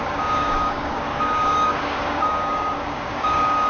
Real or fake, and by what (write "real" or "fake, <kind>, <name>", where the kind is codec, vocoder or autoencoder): fake, codec, DAC